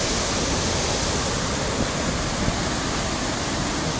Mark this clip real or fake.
real